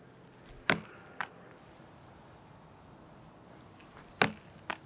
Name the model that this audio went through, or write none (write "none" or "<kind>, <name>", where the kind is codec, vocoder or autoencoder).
none